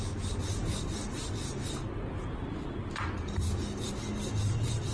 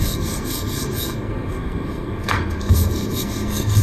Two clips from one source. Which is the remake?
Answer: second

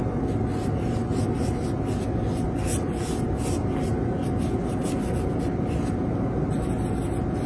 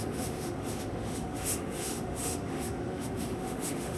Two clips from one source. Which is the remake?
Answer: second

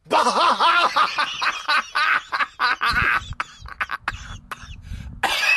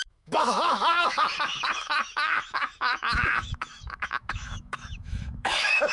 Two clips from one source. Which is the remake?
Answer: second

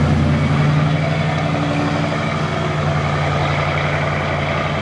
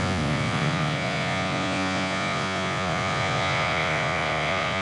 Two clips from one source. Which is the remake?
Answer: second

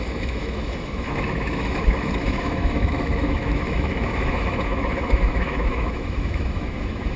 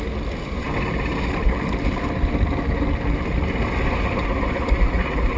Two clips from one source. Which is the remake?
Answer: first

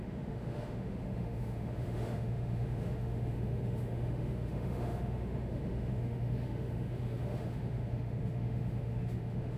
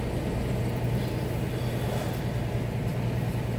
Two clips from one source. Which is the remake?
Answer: first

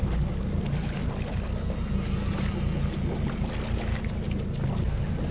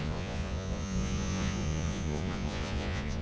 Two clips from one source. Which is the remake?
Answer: second